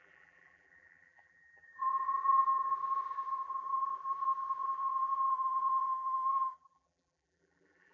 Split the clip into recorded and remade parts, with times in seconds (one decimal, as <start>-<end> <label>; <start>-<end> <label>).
0.0-7.9 remade